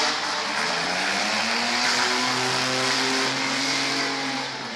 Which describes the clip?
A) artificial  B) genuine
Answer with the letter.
B